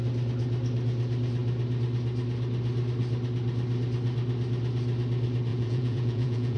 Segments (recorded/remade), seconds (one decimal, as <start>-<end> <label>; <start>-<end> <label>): 0.0-5.5 recorded; 5.5-6.6 remade